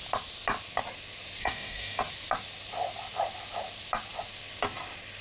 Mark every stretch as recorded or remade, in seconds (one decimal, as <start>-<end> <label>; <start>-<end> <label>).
0.0-1.4 recorded; 1.4-2.0 remade; 2.0-5.2 recorded